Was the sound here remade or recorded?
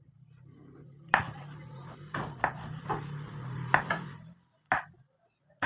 recorded